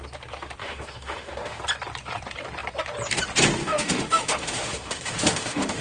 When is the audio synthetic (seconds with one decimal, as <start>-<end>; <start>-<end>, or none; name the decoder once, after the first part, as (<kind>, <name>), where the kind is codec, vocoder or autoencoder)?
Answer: 0.6-1.6 (autoencoder, DAC-VAE); 3.6-5.8